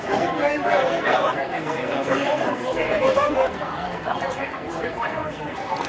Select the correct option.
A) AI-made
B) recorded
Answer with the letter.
A